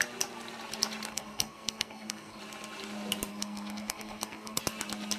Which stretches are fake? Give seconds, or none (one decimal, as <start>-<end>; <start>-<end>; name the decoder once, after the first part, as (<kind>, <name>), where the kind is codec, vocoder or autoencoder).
1.1-2.4 (codec, SNAC); 3.3-4.6